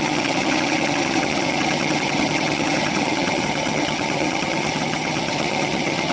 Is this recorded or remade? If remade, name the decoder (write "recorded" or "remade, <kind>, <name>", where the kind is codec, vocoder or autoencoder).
remade, vocoder, HiFi-GAN